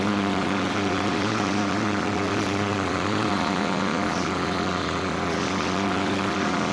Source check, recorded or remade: remade